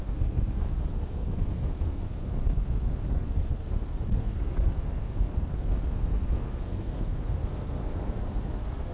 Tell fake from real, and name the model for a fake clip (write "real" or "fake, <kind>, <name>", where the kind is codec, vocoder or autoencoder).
fake, codec, SNAC